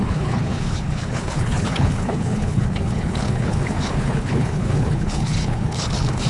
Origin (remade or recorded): remade